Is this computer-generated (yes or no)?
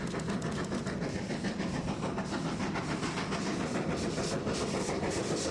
no